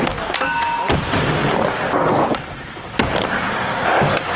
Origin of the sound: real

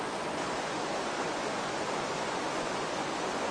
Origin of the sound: fake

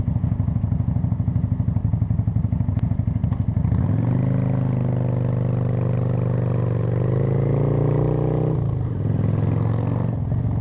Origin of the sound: real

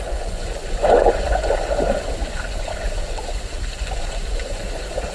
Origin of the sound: fake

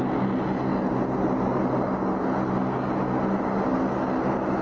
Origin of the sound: real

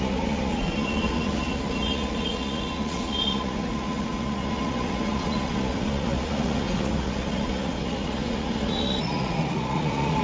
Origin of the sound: fake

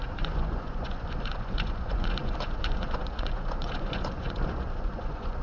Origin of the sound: fake